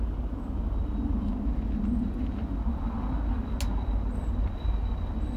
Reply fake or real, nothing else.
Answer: real